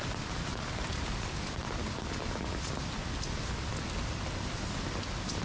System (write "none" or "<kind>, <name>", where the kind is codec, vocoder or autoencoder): none